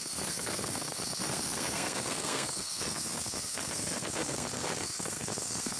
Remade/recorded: remade